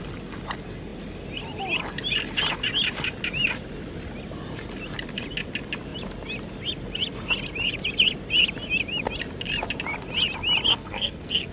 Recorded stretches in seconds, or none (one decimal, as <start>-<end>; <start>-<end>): 0.0-10.7